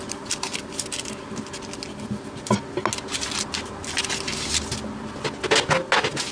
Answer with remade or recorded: recorded